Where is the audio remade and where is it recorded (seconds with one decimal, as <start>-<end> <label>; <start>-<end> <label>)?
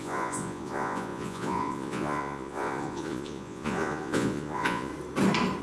0.0-4.9 remade; 4.9-5.6 recorded